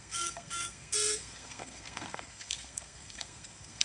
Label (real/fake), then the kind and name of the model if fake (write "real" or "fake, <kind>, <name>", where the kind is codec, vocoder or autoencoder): fake, codec, SNAC